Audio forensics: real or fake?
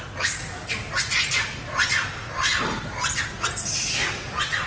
real